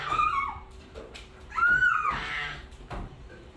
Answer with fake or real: fake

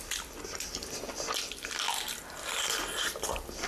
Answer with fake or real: real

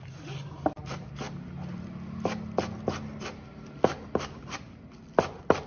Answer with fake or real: real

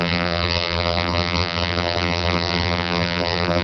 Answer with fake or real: fake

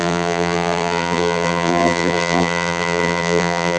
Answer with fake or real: fake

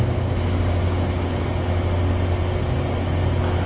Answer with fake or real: real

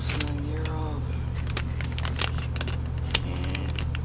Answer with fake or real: real